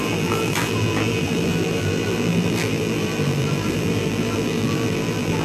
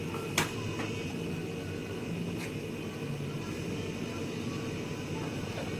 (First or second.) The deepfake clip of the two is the first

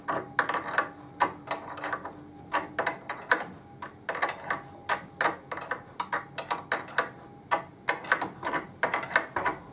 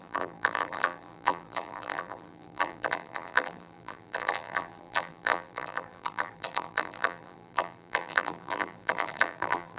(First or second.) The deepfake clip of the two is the second